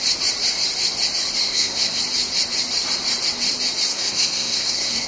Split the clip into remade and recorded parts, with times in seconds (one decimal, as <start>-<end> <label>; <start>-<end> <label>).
0.0-1.4 recorded; 1.4-2.0 remade; 2.0-3.9 recorded; 3.9-5.1 remade